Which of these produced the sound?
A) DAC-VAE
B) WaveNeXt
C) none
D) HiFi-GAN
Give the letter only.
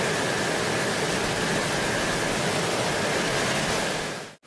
C